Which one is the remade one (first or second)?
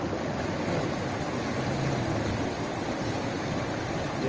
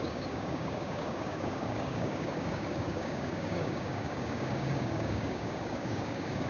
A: second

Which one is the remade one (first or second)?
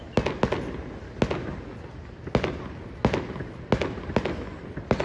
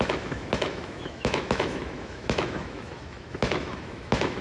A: second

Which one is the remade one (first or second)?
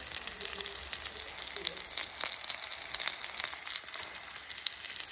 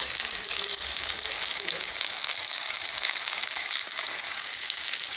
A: second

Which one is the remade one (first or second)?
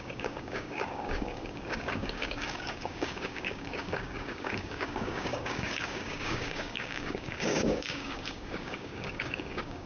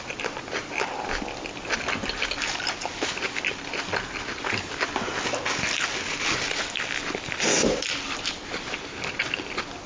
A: first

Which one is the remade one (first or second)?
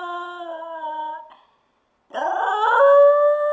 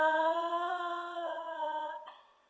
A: second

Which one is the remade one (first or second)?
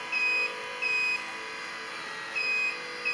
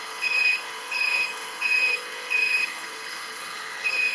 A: second